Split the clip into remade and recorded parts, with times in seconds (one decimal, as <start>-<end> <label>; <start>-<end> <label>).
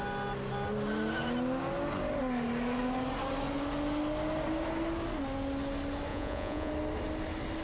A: 0.0-6.1 recorded; 6.1-6.7 remade; 6.7-7.6 recorded